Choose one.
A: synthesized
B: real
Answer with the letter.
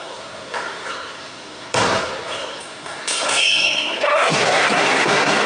A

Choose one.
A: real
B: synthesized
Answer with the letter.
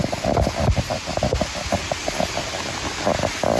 A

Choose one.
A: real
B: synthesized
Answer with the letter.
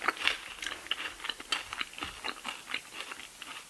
A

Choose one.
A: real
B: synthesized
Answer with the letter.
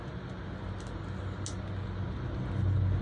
A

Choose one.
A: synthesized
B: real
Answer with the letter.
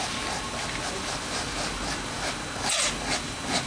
B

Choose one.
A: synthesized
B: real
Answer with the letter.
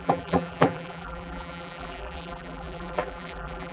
A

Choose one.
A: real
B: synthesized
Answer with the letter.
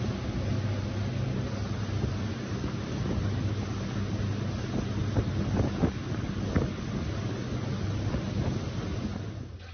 A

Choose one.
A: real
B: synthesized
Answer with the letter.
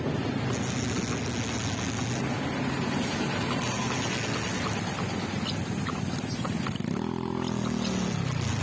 A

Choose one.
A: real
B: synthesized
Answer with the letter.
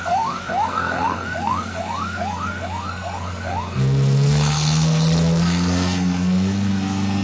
B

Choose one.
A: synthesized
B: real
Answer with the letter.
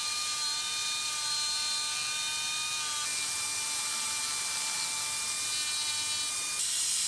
B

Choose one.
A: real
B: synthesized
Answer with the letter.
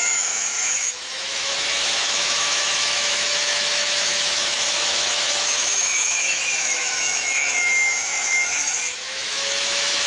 B